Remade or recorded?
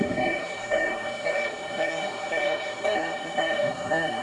remade